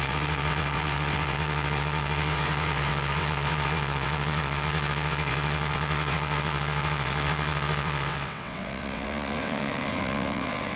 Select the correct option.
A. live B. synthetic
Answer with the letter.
B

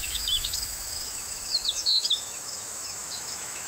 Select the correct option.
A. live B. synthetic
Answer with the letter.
B